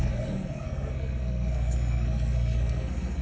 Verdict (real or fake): fake